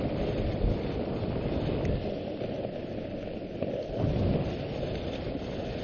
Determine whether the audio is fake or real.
real